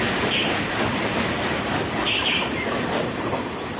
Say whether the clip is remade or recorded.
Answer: recorded